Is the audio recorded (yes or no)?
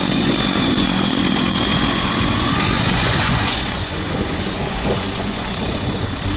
no